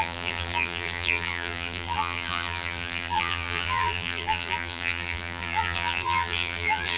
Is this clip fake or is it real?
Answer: fake